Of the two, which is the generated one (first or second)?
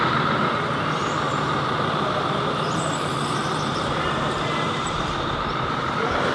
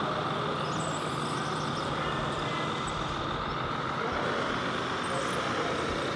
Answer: first